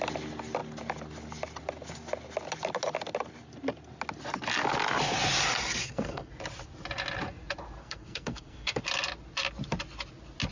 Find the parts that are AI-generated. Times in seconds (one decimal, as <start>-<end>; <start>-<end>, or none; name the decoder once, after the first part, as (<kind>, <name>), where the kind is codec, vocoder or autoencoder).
5.8-6.3 (codec, SNAC); 7.8-8.8